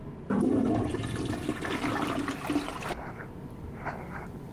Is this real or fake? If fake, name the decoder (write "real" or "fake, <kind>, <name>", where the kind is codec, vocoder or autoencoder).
real